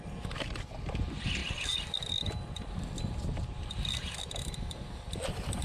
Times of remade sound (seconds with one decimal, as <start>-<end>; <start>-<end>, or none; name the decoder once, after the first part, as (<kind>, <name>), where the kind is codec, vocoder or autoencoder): 1.4-4.8 (vocoder, BigVGAN v2)